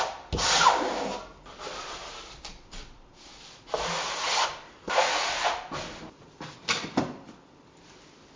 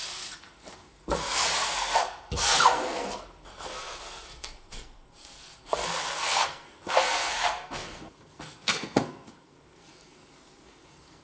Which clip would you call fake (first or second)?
second